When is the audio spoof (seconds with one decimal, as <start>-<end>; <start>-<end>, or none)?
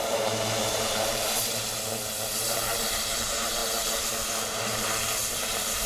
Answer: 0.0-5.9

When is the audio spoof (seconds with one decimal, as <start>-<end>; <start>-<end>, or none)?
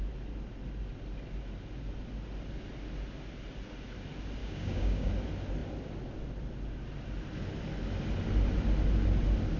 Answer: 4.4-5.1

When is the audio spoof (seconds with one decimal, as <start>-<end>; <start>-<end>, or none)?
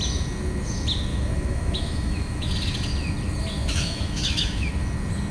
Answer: 1.1-2.5; 3.6-4.7